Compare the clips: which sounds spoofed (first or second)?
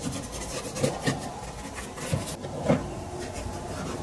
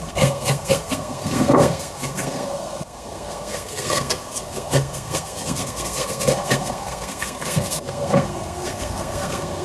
second